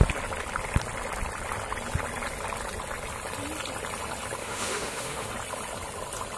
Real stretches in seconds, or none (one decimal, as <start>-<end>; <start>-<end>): 0.0-4.4; 5.3-6.4